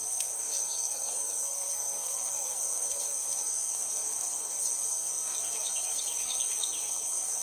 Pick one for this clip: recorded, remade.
remade